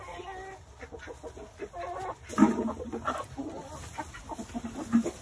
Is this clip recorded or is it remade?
recorded